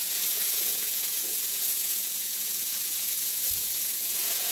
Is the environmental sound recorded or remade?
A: remade